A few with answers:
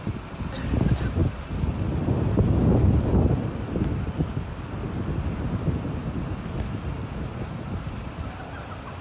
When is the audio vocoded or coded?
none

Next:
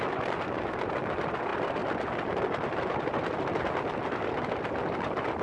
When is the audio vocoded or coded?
none

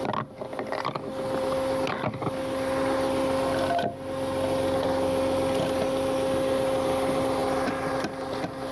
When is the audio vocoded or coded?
none

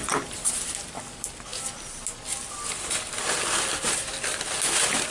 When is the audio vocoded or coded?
0.0-0.5 (vocoder, BigVGAN v2)

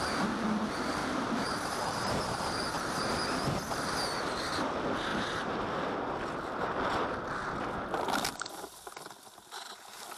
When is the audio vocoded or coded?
1.0-3.1 (vocoder, BigVGAN v2); 5.1-5.6